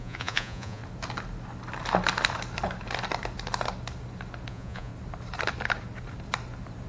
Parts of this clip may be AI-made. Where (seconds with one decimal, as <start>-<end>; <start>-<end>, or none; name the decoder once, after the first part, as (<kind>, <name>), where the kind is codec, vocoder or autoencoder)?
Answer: 0.0-0.8 (vocoder, Vocos); 4.5-4.9